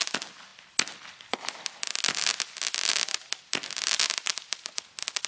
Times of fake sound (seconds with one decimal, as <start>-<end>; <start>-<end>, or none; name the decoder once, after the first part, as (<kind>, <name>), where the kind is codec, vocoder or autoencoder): none